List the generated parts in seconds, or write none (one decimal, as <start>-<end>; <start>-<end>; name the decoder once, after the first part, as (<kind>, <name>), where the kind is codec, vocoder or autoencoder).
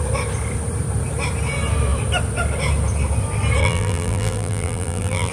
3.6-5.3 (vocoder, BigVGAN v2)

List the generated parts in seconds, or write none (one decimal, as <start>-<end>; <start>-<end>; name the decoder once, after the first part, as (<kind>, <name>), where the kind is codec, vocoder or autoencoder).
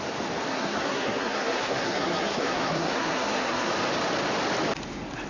0.5-3.7 (codec, SNAC)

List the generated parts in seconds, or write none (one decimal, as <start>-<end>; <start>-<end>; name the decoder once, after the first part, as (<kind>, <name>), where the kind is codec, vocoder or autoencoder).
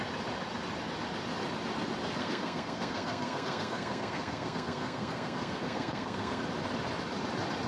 2.2-6.4 (codec, SNAC)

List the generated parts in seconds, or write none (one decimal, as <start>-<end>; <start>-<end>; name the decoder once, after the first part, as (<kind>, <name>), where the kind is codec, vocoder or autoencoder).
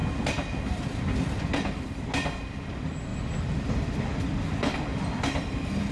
1.0-3.1 (vocoder, BigVGAN v2); 3.7-5.9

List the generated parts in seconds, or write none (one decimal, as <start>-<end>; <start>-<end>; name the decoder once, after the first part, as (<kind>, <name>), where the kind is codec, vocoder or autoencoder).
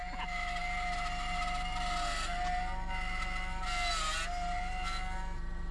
none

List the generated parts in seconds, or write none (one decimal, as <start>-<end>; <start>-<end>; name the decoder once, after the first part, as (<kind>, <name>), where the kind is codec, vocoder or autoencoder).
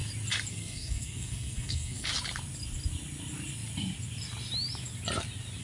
0.5-2.1 (codec, SNAC)